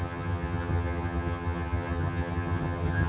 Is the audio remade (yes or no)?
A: yes